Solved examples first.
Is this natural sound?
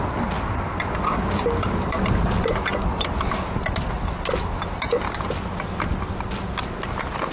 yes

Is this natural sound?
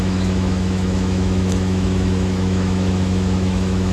no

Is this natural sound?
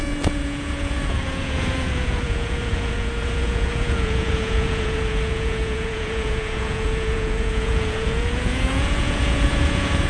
no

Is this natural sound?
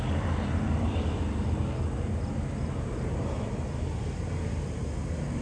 yes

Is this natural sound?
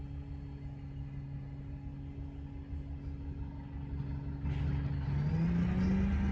yes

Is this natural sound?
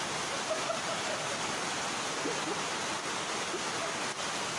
yes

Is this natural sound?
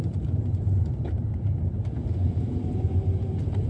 no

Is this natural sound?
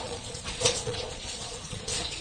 no